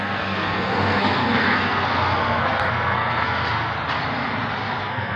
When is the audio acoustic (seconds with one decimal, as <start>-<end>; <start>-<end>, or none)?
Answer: 3.7-4.8